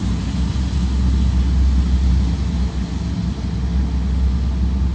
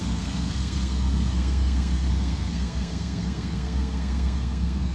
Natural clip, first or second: first